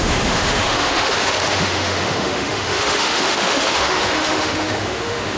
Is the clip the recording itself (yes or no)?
no